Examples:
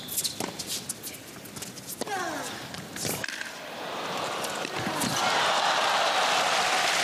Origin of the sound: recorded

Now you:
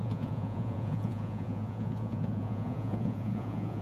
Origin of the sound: remade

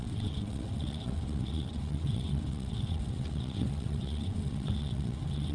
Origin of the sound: remade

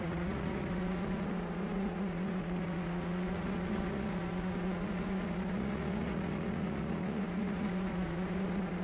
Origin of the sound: remade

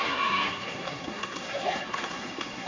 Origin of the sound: remade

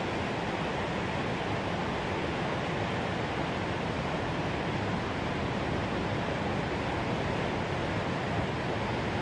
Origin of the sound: recorded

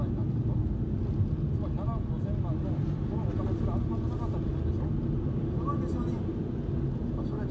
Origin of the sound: recorded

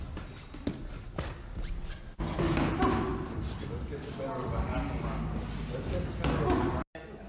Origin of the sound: recorded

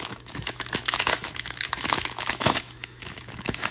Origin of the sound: remade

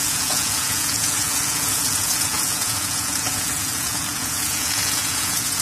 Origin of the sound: remade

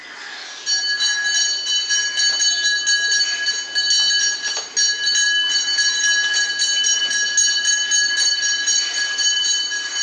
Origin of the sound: recorded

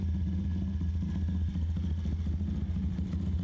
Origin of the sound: recorded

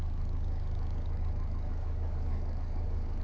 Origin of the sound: remade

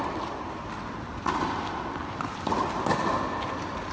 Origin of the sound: recorded